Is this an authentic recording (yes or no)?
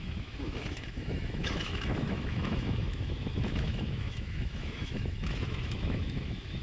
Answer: no